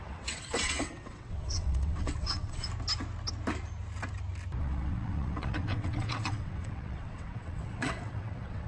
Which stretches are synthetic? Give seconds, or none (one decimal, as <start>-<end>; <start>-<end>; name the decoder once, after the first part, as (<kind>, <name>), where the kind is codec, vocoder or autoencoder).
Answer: 0.0-2.7 (vocoder, WaveNeXt); 4.6-8.7